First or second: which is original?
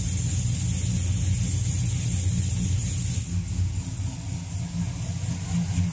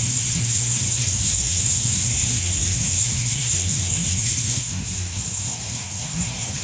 first